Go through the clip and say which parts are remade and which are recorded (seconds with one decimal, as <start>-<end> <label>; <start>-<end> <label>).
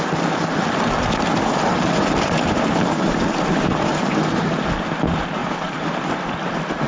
0.0-1.7 recorded; 1.7-4.6 remade; 4.6-5.4 recorded; 5.4-5.9 remade; 5.9-6.9 recorded